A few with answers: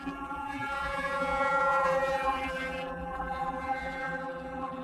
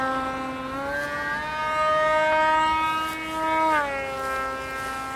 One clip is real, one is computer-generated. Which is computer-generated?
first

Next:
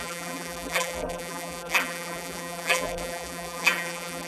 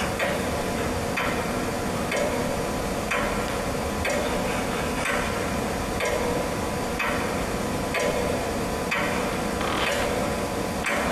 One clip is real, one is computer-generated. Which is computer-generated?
first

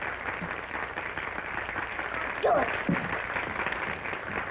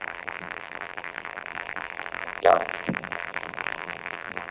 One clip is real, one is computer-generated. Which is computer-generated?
second